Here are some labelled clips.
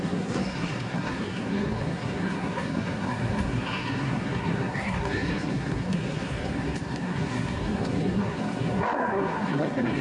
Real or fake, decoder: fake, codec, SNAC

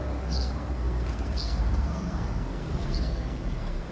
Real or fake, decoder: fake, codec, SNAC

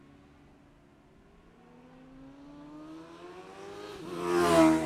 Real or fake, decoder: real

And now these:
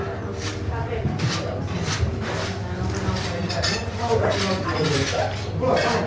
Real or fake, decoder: real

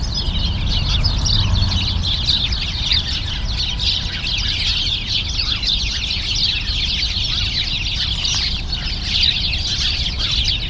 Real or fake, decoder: real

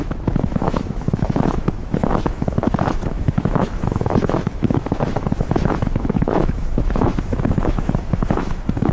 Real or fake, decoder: fake, autoencoder, DAC-VAE